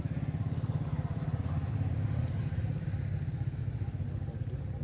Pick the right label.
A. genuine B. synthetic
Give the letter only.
A